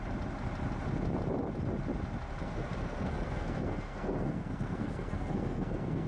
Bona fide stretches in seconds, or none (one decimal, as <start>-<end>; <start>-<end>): 0.0-2.4